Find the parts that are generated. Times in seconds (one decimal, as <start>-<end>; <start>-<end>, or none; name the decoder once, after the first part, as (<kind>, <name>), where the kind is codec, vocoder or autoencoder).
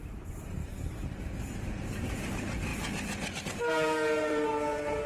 0.0-0.6 (vocoder, BigVGAN v2); 1.9-2.7; 3.4-5.1